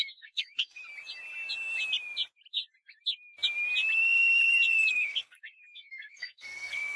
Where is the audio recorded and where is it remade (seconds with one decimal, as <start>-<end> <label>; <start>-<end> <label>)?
0.0-0.8 remade; 0.8-4.9 recorded; 4.9-7.0 remade